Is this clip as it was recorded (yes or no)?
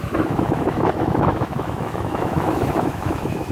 no